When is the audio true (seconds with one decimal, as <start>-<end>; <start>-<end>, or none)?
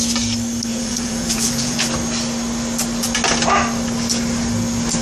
0.0-0.7; 1.8-5.0